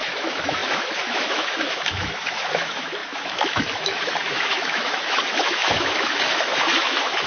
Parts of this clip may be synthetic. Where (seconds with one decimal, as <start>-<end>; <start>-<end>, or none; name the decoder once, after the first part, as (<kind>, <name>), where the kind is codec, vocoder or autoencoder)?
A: 0.0-7.3 (autoencoder, DAC-VAE)